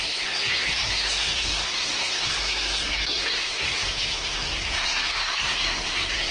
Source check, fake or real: fake